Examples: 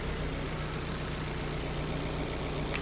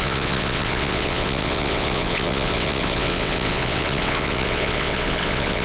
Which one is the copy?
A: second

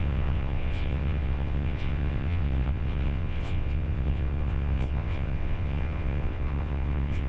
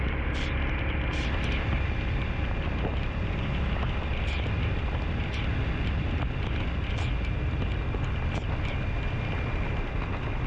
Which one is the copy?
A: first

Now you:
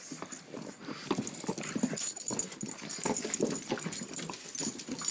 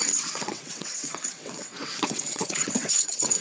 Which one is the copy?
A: second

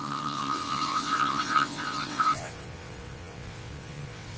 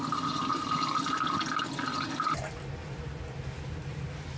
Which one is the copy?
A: first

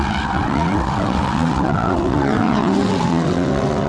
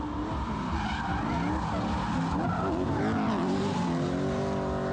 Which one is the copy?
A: first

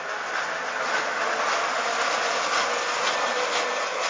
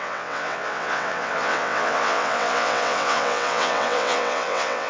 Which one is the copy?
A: second